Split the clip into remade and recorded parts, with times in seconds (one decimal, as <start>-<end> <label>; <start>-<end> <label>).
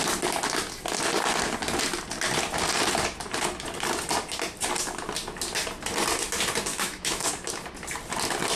0.0-6.7 recorded; 6.7-7.3 remade; 7.3-8.6 recorded